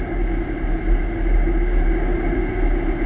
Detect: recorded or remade recorded